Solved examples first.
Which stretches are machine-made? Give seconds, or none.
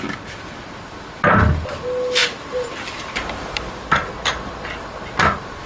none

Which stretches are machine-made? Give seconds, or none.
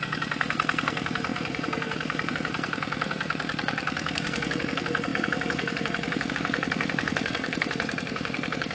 0.0-8.7 (codec, SNAC)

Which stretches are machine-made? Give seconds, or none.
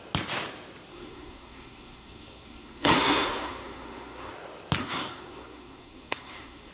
0.9-4.3 (codec, SNAC); 4.8-6.7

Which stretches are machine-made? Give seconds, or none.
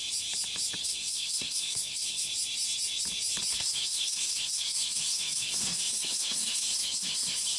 0.8-2.3 (codec, SNAC); 3.5-7.6